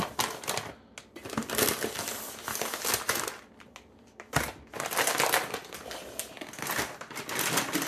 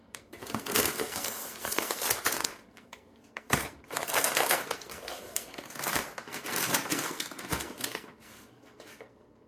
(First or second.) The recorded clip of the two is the first